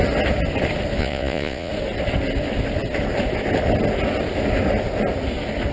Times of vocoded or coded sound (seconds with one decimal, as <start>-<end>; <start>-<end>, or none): 1.0-1.7